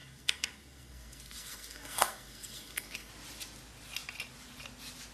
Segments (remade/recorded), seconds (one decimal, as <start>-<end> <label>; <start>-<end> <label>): 0.0-3.1 remade; 3.1-5.1 recorded